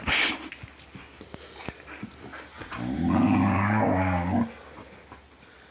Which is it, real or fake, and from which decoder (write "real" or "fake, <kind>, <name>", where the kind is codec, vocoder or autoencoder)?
real